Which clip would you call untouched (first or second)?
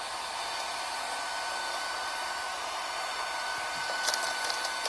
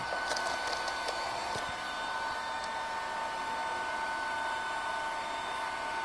second